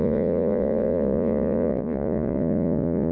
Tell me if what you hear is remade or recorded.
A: remade